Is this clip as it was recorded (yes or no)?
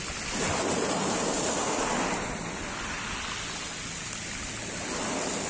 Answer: yes